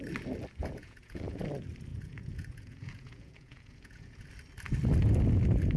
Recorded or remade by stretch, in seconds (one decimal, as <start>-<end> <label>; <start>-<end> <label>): 0.0-0.6 recorded; 0.6-1.4 remade; 1.4-1.9 recorded; 1.9-4.3 remade; 4.3-5.8 recorded